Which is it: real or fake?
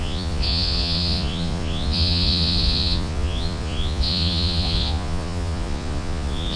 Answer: fake